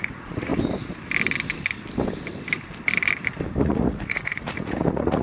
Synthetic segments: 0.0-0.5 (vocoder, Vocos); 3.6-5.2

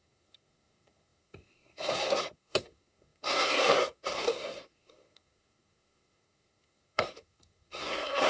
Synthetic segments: 0.0-8.3 (codec, SNAC)